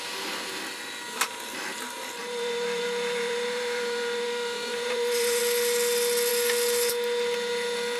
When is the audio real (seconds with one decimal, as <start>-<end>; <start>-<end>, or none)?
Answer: 0.0-2.2; 5.4-8.0